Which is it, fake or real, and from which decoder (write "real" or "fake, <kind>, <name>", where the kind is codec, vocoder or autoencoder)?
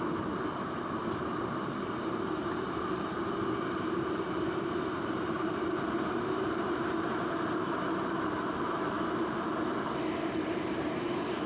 fake, vocoder, BigVGAN v2